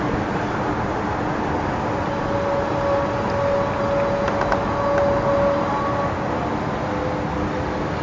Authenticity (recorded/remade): recorded